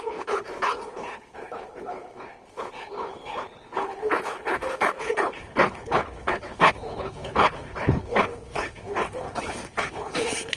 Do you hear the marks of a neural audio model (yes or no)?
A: yes